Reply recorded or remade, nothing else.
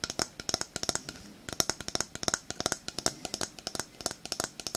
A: recorded